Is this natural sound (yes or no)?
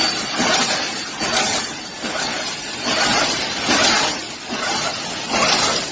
yes